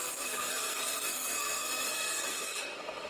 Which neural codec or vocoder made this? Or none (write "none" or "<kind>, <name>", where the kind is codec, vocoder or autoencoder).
codec, SNAC